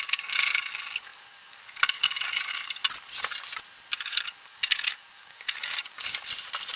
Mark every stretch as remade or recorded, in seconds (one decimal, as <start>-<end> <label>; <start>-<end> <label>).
0.0-2.8 remade; 2.8-4.0 recorded; 4.0-6.0 remade; 6.0-6.8 recorded